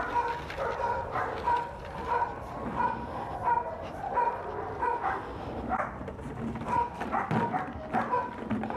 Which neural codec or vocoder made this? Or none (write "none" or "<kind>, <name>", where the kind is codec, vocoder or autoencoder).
none